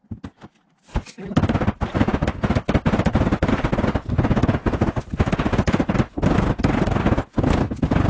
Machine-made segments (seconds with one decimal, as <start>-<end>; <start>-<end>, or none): none